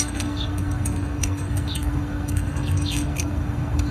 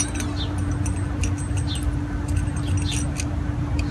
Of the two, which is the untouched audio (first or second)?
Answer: second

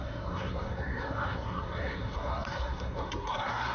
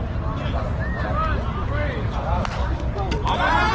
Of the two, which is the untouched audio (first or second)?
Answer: second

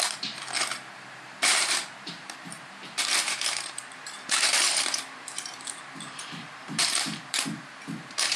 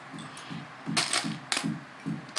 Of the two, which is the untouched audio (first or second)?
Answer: second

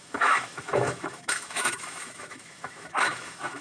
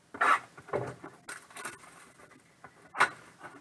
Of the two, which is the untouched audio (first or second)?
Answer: second